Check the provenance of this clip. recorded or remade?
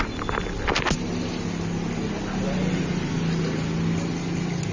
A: recorded